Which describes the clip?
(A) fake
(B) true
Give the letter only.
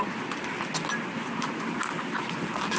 B